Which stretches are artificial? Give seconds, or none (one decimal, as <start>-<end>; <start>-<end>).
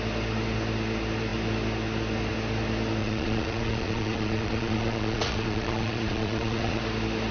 3.0-6.8